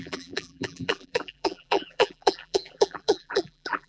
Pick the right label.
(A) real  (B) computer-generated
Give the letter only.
B